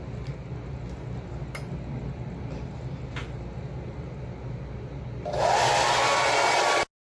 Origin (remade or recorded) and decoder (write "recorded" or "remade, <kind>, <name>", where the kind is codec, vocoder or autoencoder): recorded